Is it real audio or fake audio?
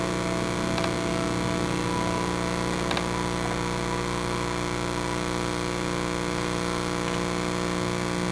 real